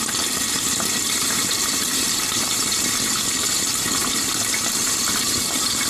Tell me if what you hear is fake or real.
fake